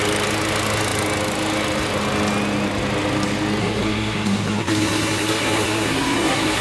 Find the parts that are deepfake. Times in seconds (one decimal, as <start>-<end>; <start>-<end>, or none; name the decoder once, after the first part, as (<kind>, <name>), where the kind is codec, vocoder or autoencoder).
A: 3.6-6.6 (codec, SNAC)